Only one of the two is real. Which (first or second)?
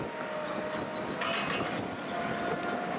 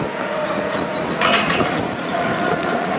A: first